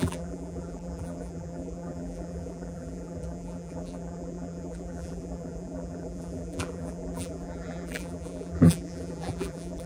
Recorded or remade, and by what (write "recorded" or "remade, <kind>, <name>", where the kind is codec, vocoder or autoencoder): remade, vocoder, BigVGAN v2